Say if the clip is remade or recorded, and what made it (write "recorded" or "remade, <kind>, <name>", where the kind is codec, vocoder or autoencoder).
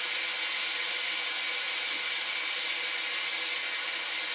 recorded